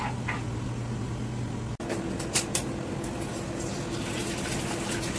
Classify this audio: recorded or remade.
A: recorded